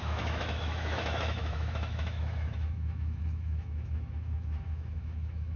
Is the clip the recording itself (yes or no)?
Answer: no